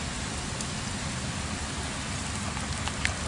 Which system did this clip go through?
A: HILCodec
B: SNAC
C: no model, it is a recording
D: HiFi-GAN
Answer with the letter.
C